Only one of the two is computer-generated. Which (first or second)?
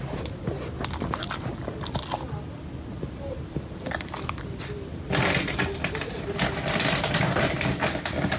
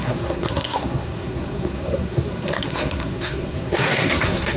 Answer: second